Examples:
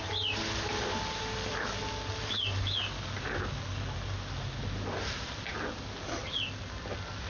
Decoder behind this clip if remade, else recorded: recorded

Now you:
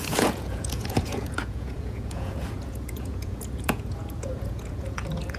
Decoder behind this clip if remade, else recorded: remade, vocoder, Vocos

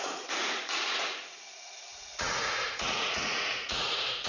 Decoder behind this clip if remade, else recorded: remade, vocoder, Vocos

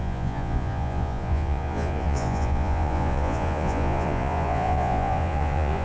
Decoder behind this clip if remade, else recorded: remade, vocoder, Vocos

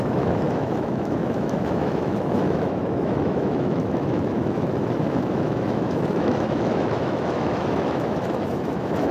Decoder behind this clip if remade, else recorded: remade, autoencoder, DAC-VAE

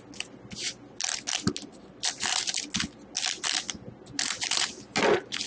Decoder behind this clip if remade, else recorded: recorded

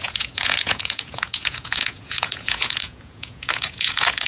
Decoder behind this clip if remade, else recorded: remade, vocoder, Vocos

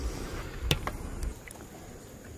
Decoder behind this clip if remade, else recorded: recorded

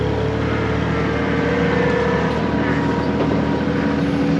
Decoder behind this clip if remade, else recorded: recorded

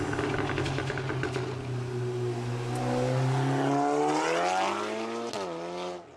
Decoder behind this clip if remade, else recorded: recorded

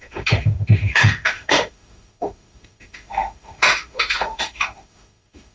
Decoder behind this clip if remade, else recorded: remade, autoencoder, DAC-VAE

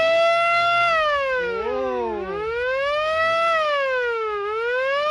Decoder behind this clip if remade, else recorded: remade, autoencoder, DAC-VAE